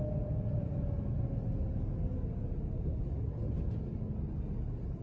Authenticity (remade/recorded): recorded